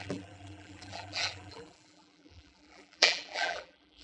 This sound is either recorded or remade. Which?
remade